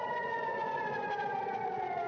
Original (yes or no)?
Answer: no